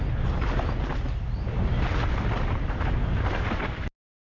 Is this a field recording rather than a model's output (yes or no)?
yes